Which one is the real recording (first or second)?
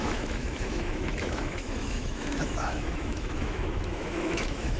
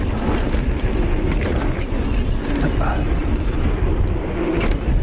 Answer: second